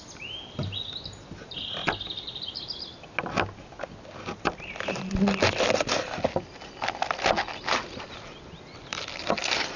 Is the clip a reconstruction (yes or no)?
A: no